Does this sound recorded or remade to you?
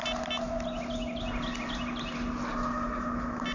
recorded